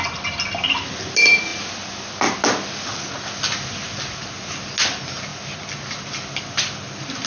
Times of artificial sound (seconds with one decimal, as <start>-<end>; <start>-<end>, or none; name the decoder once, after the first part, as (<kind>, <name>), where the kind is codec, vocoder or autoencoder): none